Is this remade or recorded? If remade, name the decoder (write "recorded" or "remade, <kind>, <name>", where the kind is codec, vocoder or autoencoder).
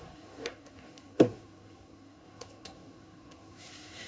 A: remade, codec, SNAC